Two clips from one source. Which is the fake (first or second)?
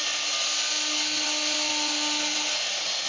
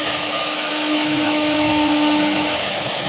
second